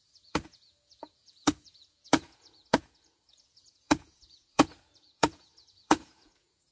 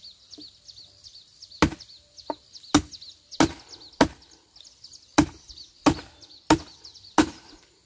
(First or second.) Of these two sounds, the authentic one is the second